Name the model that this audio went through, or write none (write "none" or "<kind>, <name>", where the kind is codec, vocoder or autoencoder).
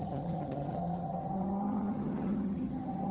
vocoder, HiFi-GAN